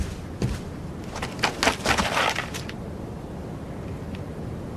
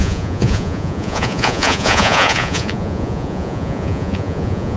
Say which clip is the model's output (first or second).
second